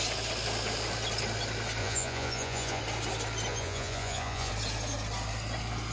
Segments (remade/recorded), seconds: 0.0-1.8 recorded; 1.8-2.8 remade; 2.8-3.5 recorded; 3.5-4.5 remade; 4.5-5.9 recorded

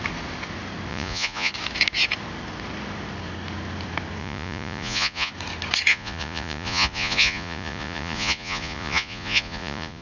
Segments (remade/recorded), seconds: 0.0-0.9 recorded; 0.9-1.5 remade; 1.5-4.2 recorded; 4.2-5.3 remade; 5.3-5.9 recorded; 5.9-10.0 remade

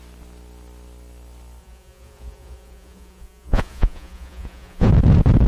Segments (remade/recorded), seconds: 0.0-1.6 recorded; 1.6-4.9 remade; 4.9-5.5 recorded

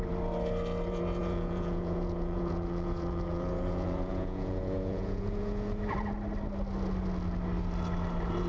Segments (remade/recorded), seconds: 0.0-1.2 recorded; 1.2-5.8 remade; 5.8-8.5 recorded

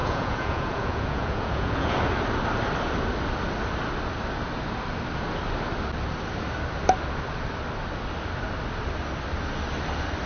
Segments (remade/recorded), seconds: 0.0-2.0 remade; 2.0-10.3 recorded

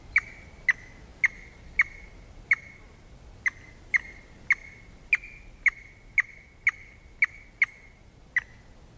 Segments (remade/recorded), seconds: 0.0-9.0 recorded

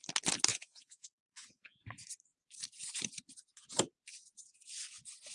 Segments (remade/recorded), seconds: 0.0-0.5 recorded; 0.5-1.8 remade; 1.8-5.3 recorded

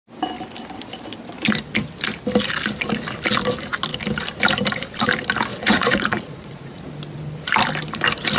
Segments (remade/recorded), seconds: 0.0-5.5 recorded; 5.5-6.8 remade; 6.8-8.4 recorded